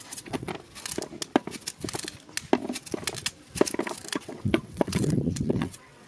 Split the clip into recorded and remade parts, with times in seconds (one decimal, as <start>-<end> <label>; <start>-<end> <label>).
0.0-0.5 remade; 0.5-4.2 recorded; 4.2-6.1 remade